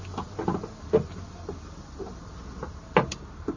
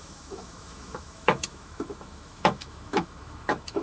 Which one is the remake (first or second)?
second